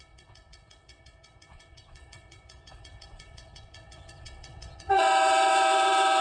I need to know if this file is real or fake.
fake